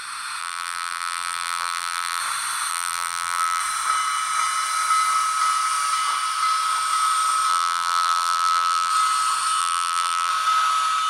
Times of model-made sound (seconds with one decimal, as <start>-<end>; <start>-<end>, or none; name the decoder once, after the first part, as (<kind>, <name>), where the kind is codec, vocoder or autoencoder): 0.4-2.2 (vocoder, BigVGAN v2); 2.7-3.6; 7.5-8.9; 9.6-10.3